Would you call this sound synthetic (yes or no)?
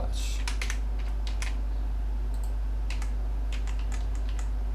no